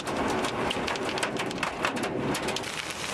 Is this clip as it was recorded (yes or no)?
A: yes